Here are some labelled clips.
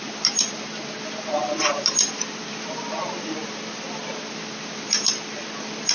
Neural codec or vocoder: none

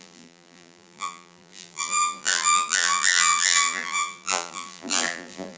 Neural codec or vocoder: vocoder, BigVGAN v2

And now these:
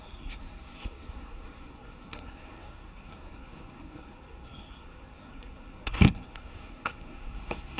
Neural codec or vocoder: codec, SNAC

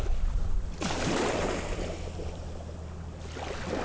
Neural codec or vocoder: none